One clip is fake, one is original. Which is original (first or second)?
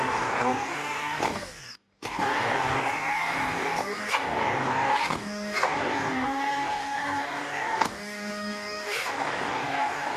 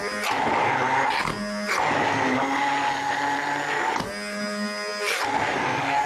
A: second